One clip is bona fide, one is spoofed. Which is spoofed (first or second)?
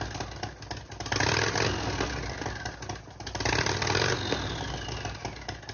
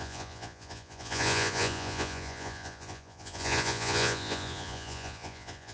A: second